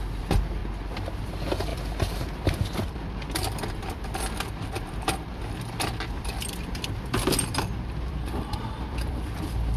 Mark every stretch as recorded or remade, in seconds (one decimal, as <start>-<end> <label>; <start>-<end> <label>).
0.0-0.6 remade; 0.6-1.2 recorded; 1.2-9.8 remade